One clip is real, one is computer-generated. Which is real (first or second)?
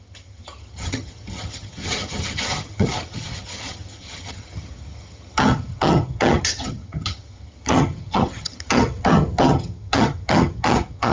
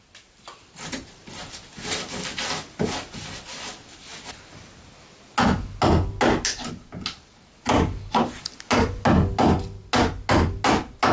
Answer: second